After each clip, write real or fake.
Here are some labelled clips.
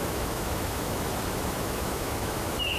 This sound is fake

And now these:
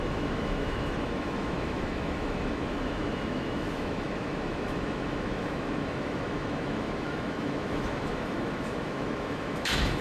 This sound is fake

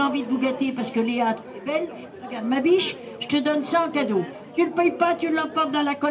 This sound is real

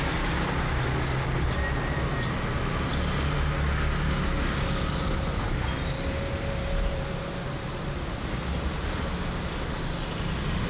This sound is real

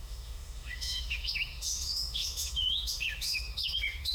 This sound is fake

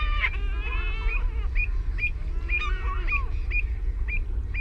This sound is real